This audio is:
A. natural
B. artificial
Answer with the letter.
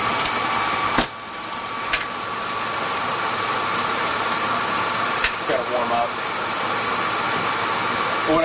A